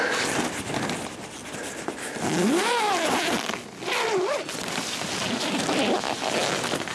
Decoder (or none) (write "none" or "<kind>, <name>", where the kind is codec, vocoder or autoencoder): none